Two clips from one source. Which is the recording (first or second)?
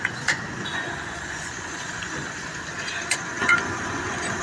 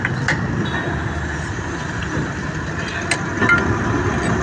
second